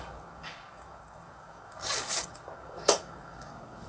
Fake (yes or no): yes